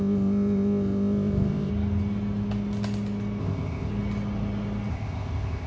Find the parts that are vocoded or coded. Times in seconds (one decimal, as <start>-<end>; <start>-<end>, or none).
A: 0.0-1.7; 3.4-3.9; 4.9-5.7